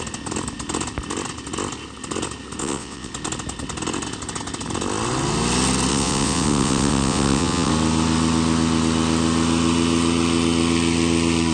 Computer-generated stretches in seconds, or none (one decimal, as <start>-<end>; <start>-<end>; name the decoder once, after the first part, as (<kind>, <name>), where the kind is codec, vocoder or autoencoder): 2.6-3.1 (vocoder, WaveNeXt); 5.9-7.7